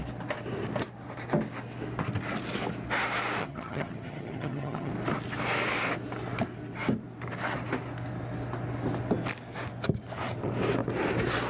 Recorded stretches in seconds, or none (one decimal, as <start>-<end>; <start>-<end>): 0.0-3.4; 4.9-11.5